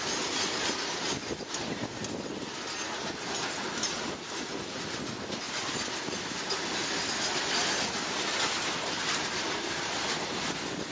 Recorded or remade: recorded